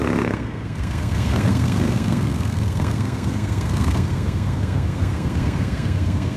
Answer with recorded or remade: remade